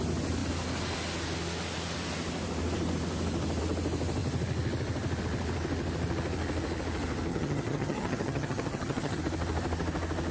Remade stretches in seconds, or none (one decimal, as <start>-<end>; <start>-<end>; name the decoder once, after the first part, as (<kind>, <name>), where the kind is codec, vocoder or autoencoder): 7.3-9.2 (vocoder, HiFi-GAN)